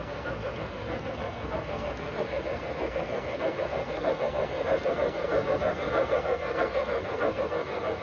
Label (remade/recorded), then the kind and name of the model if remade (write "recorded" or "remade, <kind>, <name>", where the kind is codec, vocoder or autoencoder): remade, codec, SNAC